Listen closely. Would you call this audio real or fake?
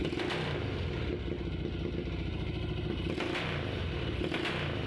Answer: real